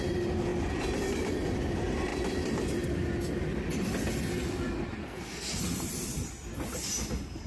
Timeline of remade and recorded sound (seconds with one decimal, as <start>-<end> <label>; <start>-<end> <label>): 0.0-5.0 recorded; 5.0-5.6 remade; 5.6-7.5 recorded

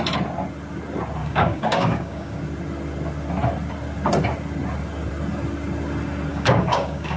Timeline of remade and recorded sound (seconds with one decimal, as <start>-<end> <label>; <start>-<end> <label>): 0.0-1.2 recorded; 1.2-2.4 remade; 2.4-6.3 recorded; 6.3-7.2 remade

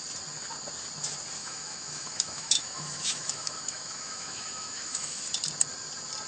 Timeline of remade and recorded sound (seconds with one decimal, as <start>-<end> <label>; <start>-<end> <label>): 0.0-1.4 recorded; 1.4-5.2 remade; 5.2-6.3 recorded

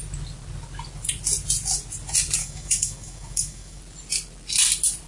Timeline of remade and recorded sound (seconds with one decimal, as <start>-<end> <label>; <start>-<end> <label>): 0.0-2.4 recorded; 2.4-3.8 remade; 3.8-5.1 recorded

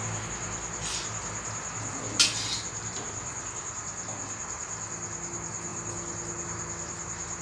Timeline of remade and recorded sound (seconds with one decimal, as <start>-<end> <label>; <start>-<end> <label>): 0.0-7.4 recorded

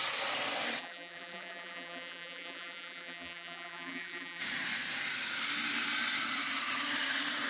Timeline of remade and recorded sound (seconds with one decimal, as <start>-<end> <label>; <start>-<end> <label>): 0.0-0.8 recorded; 0.8-4.4 remade; 4.4-7.5 recorded